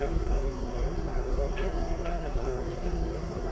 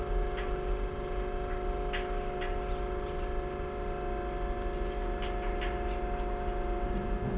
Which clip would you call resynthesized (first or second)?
first